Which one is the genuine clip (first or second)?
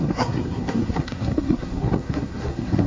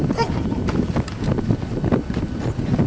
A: second